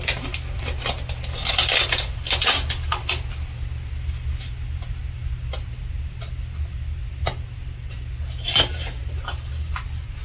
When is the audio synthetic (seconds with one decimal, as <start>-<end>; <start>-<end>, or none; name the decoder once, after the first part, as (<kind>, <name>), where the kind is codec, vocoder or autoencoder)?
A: none